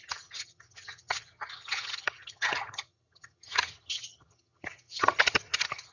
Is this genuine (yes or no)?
no